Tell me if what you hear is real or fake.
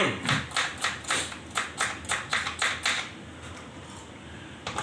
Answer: real